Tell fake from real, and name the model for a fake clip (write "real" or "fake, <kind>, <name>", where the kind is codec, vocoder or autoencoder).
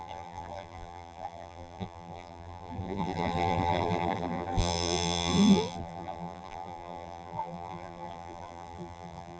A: fake, vocoder, BigVGAN v2